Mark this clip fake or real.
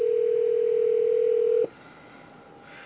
real